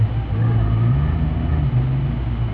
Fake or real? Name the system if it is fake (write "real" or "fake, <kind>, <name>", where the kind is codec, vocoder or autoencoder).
real